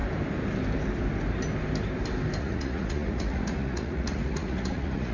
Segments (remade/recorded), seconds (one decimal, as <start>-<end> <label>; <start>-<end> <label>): 0.0-2.4 recorded; 2.4-5.1 remade